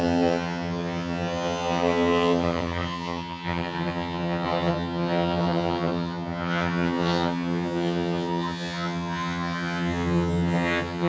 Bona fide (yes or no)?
no